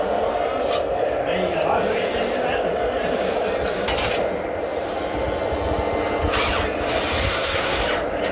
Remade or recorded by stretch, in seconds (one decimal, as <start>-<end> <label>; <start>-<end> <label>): 0.0-7.2 recorded; 7.2-7.8 remade; 7.8-8.3 recorded